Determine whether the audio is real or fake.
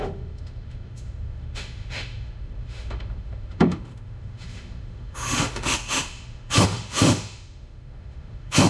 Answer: fake